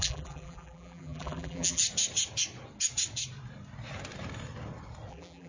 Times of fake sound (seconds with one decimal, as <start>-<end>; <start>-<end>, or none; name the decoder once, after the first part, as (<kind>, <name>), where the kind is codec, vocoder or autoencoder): 0.0-1.8 (vocoder, BigVGAN v2); 5.1-5.5